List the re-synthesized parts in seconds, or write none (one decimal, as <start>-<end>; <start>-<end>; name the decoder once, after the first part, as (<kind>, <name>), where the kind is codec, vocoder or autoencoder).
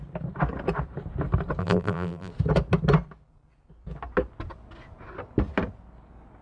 1.6-2.3 (vocoder, BigVGAN v2)